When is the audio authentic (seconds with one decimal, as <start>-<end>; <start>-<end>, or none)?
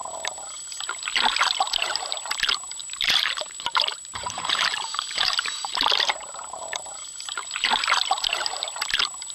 0.0-2.8; 7.7-9.3